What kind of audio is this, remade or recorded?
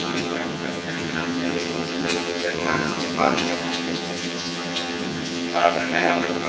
remade